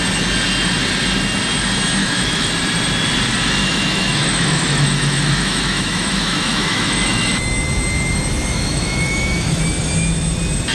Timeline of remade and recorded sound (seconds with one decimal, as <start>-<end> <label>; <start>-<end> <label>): 0.0-2.0 recorded; 2.0-2.5 remade; 2.5-3.6 recorded; 3.6-7.4 remade; 7.4-8.5 recorded; 8.5-9.6 remade; 9.6-10.7 recorded